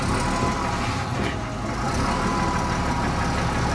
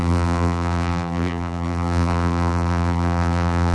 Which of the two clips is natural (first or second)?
first